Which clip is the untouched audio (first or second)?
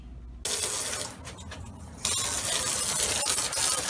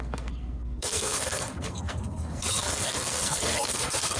first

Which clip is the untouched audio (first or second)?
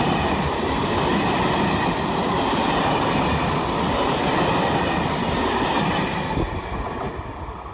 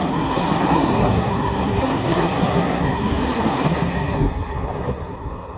first